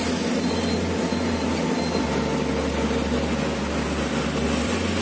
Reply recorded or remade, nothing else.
recorded